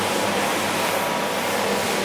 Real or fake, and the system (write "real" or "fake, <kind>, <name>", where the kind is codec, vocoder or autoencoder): real